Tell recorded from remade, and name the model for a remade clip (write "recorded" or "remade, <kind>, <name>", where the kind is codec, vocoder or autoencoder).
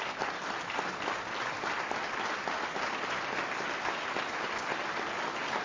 recorded